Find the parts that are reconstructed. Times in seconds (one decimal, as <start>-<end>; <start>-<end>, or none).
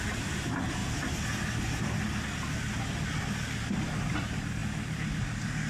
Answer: none